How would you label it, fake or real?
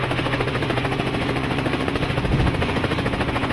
fake